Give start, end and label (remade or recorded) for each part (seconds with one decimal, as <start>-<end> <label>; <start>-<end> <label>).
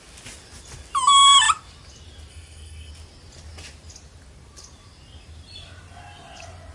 0.0-2.3 recorded; 2.3-2.9 remade; 2.9-6.7 recorded